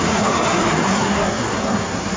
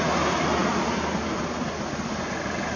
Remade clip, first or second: first